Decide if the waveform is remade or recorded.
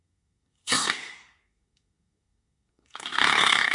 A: remade